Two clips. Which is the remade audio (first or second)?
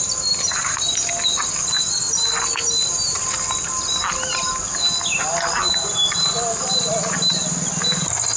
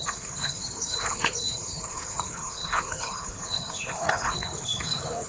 second